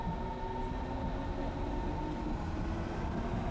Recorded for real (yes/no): yes